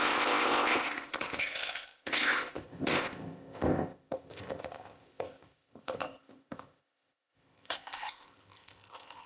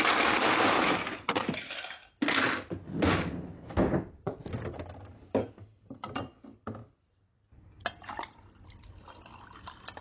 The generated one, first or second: first